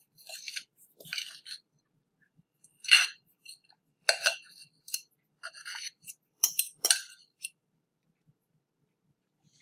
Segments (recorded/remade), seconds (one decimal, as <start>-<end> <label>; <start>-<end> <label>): 0.0-1.1 remade; 1.1-2.2 recorded; 2.2-9.6 remade